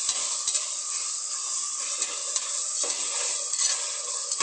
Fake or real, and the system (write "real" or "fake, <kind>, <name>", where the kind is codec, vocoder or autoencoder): real